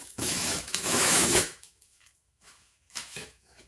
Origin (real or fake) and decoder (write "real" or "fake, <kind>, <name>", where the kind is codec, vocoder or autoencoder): fake, autoencoder, DAC-VAE